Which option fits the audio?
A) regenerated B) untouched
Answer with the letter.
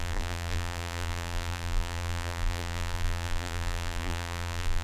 A